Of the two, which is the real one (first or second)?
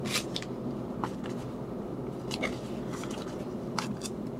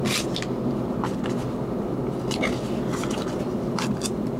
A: second